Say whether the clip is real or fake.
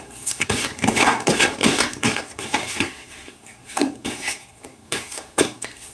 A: fake